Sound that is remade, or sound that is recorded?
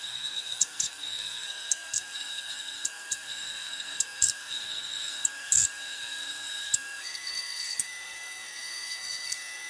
remade